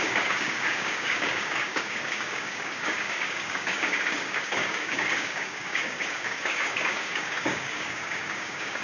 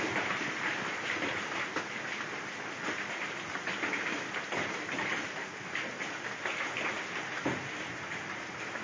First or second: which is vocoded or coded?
first